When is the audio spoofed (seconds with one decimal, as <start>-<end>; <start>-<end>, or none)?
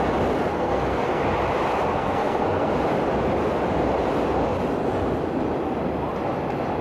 0.5-1.2; 1.9-2.7